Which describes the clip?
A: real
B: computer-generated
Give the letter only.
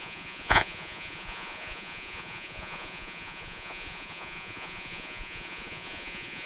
B